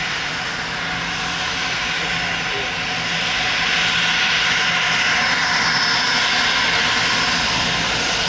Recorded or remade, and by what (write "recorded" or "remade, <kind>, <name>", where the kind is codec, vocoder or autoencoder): recorded